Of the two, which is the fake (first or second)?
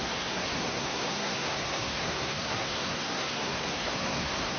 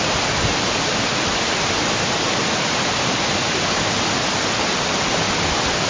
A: first